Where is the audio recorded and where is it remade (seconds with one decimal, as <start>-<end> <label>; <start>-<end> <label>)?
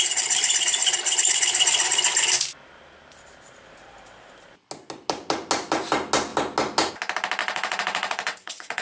0.0-7.4 recorded; 7.4-8.8 remade